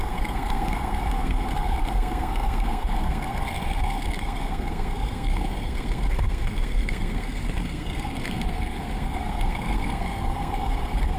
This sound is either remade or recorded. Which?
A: remade